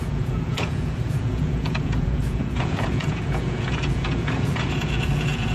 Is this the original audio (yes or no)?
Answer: no